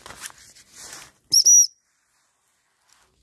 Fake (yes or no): no